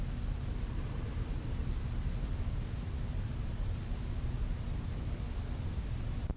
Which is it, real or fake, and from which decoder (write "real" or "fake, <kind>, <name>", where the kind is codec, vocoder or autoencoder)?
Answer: real